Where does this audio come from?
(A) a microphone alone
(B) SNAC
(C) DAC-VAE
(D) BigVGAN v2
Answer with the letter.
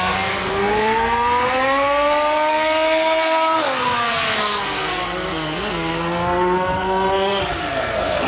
B